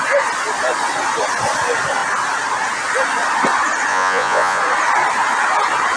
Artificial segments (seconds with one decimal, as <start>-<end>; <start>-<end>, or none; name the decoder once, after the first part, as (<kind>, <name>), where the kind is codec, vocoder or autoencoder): 3.9-4.6 (vocoder, Vocos)